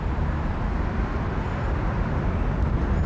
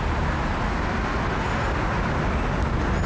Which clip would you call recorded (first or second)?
second